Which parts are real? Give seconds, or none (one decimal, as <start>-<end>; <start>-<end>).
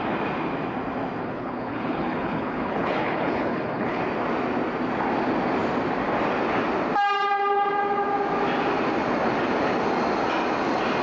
0.0-1.2; 4.0-11.0